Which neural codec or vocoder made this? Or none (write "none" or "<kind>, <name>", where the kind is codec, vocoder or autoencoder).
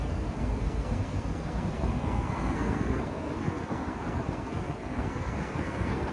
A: codec, SNAC